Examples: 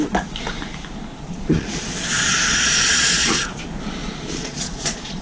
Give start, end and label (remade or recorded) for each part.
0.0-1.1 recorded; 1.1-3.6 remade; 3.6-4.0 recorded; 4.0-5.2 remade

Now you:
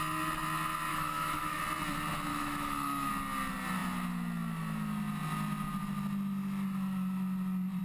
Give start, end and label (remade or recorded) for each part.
0.0-0.9 recorded; 0.9-1.6 remade; 1.6-2.3 recorded; 2.3-3.1 remade; 3.1-7.8 recorded

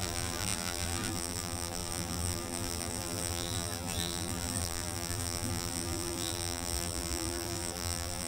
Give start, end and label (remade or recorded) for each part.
0.0-8.3 remade

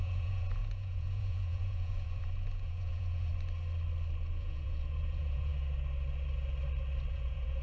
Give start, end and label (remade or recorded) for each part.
0.0-3.3 remade; 3.3-4.3 recorded; 4.3-5.5 remade; 5.5-7.1 recorded; 7.1-7.6 remade

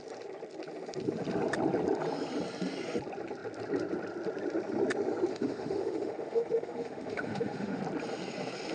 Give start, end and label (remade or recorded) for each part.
0.0-5.3 recorded; 5.3-7.8 remade; 7.8-8.7 recorded

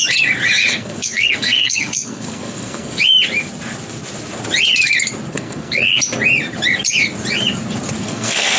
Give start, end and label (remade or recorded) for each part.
0.0-0.7 recorded; 0.7-3.0 remade; 3.0-5.3 recorded; 5.3-6.0 remade; 6.0-8.0 recorded; 8.0-8.6 remade

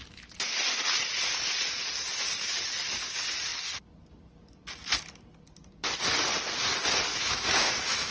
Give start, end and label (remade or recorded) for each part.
0.0-7.1 recorded; 7.1-8.1 remade

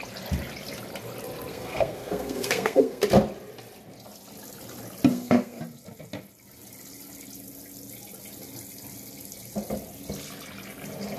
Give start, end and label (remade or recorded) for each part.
0.0-1.5 recorded; 1.5-3.0 remade; 3.0-5.1 recorded; 5.1-5.6 remade; 5.6-11.2 recorded